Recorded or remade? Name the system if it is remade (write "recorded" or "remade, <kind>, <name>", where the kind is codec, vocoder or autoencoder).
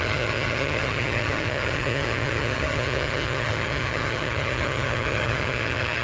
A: remade, vocoder, HiFi-GAN